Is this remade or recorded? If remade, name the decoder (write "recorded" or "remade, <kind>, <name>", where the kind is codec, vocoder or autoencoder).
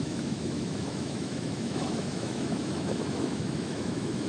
remade, autoencoder, DAC-VAE